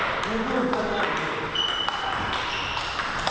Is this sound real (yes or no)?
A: yes